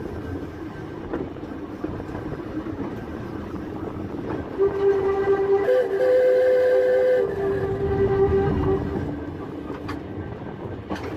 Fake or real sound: real